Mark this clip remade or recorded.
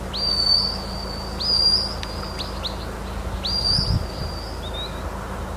recorded